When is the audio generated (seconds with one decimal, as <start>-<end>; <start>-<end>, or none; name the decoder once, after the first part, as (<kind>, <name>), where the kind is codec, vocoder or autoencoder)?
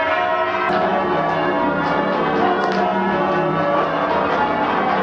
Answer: none